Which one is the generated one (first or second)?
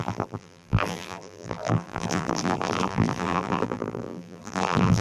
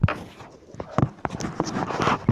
first